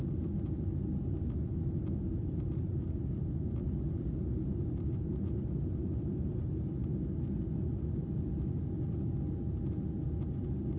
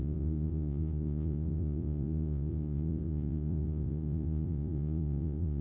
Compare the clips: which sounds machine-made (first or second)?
second